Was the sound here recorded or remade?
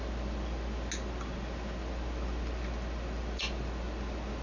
recorded